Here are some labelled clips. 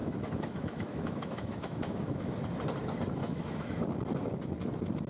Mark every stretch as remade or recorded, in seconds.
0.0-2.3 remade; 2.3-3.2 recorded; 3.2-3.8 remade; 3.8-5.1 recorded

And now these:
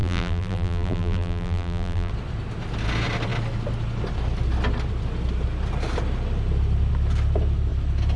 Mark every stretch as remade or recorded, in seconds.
0.0-2.1 remade; 2.1-8.2 recorded

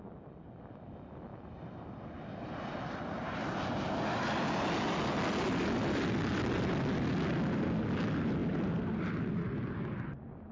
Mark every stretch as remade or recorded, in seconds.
0.0-10.5 recorded

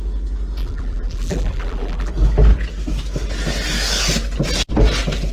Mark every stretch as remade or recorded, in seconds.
0.0-0.6 recorded; 0.6-2.1 remade; 2.1-5.3 recorded

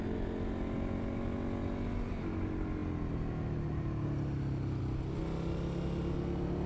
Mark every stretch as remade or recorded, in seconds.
0.0-6.7 recorded

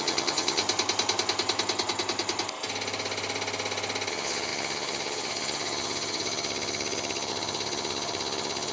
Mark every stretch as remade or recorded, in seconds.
0.0-0.6 remade; 0.6-4.1 recorded; 4.1-8.7 remade

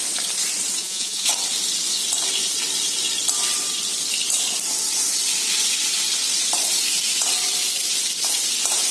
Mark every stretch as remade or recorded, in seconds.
0.0-0.8 recorded; 0.8-1.3 remade; 1.3-8.9 recorded

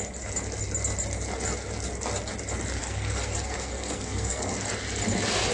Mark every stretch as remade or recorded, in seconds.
0.0-2.8 recorded; 2.8-4.5 remade; 4.5-5.5 recorded